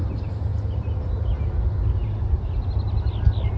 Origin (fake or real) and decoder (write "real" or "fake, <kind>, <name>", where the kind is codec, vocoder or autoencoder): real